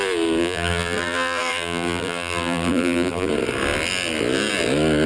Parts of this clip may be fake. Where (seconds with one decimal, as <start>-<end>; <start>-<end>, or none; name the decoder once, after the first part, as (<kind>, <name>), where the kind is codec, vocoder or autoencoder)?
0.4-3.3 (vocoder, BigVGAN v2)